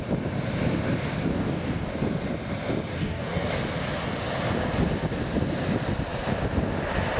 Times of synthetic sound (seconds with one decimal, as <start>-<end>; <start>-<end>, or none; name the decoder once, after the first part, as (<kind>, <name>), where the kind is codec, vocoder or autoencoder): 1.3-1.9 (codec, DAC); 2.9-3.5